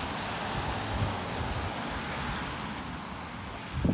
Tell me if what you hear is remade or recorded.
recorded